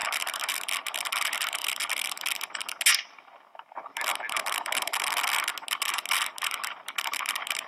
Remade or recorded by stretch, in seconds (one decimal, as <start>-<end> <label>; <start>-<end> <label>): 0.0-7.7 recorded